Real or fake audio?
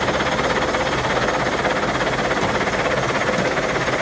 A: real